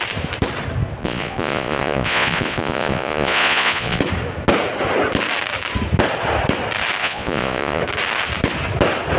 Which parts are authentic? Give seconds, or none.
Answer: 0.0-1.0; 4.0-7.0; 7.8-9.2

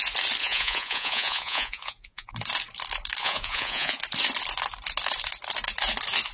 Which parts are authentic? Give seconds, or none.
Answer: 0.0-0.4; 2.3-3.2; 4.0-6.3

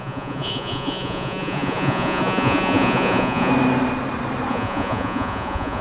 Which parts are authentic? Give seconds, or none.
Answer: 3.5-4.5

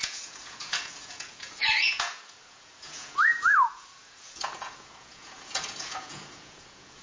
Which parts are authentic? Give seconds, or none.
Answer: none

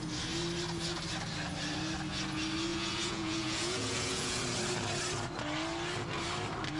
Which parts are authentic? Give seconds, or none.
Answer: 0.0-2.7; 4.4-6.8

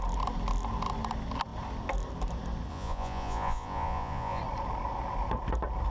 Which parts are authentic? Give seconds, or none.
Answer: 0.0-2.7; 4.4-5.9

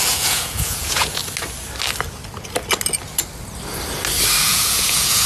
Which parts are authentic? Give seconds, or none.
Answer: 1.2-4.4